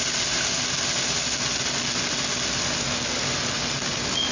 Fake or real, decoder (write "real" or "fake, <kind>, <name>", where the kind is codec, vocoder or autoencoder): real